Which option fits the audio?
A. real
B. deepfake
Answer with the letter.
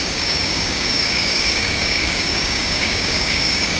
B